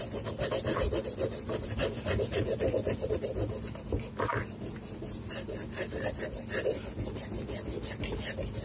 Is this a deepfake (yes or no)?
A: no